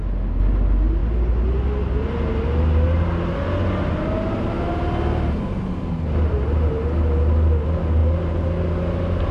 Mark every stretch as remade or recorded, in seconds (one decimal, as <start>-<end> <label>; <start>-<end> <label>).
0.0-9.3 recorded